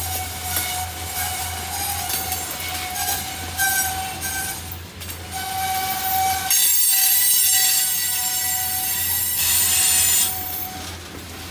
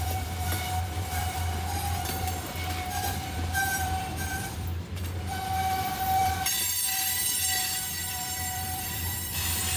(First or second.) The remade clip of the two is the second